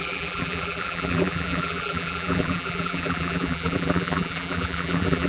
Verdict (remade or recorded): remade